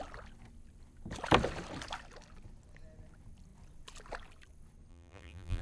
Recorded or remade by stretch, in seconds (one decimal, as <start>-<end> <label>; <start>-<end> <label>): 0.0-4.9 recorded; 4.9-5.6 remade